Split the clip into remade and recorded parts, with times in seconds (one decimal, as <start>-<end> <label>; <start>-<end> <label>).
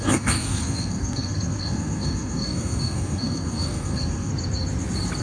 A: 0.0-4.3 remade; 4.3-5.2 recorded